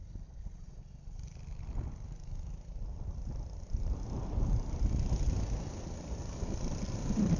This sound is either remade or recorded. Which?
recorded